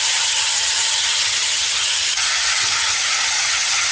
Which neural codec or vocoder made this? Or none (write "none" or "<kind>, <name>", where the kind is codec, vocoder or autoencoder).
vocoder, HiFi-GAN